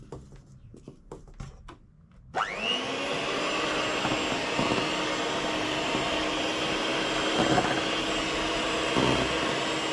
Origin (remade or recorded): recorded